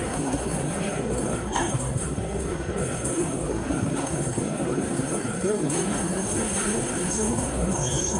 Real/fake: fake